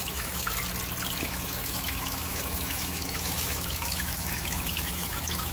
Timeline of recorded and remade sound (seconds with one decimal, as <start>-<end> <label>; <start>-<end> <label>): 0.0-0.6 remade; 0.6-1.2 recorded; 1.2-5.5 remade